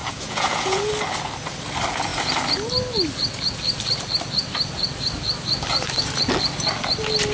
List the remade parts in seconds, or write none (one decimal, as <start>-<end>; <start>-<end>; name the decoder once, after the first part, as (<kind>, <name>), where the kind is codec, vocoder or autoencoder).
0.0-0.9 (vocoder, Vocos)